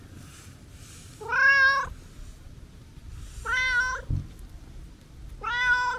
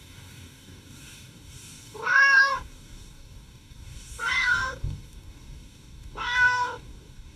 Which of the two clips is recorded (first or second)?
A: first